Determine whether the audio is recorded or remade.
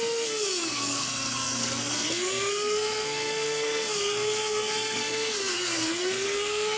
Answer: remade